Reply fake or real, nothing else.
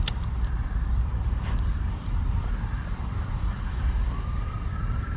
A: fake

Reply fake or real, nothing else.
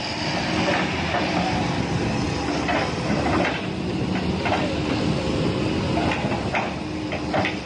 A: real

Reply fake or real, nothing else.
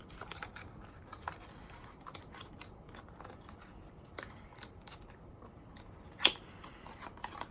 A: fake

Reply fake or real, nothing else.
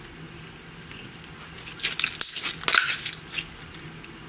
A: real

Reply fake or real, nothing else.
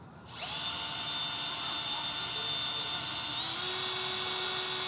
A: real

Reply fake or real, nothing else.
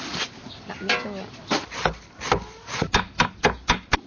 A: real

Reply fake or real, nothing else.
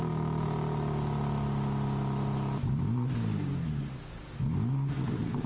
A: real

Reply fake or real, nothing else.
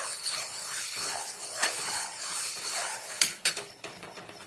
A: fake